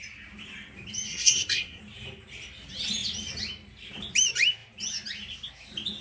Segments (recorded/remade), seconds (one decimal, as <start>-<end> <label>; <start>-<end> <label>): 0.0-1.1 recorded; 1.1-1.8 remade; 1.8-6.0 recorded